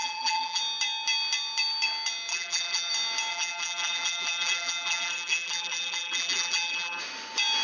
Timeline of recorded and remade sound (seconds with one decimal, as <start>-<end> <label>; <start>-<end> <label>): 0.0-0.6 remade; 0.6-2.3 recorded; 2.3-2.9 remade; 2.9-3.3 recorded; 3.3-7.0 remade; 7.0-7.6 recorded